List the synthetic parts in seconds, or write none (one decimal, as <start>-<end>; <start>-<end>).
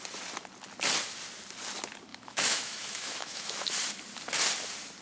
2.1-3.7